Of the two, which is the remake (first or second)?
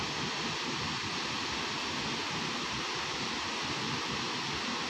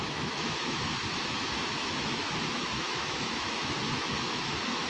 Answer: second